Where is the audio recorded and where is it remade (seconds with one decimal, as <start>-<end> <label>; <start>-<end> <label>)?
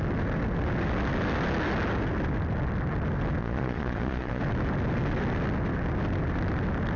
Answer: 0.0-3.4 recorded; 3.4-4.4 remade; 4.4-7.0 recorded